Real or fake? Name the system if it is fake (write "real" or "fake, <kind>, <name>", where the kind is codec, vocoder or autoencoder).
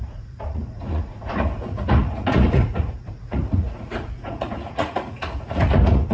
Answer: fake, vocoder, Vocos